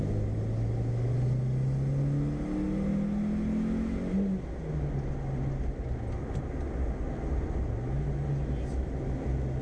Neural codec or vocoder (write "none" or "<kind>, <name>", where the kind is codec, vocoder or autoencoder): none